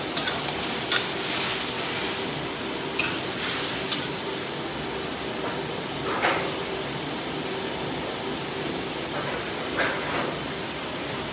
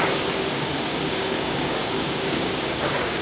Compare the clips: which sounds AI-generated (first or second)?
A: second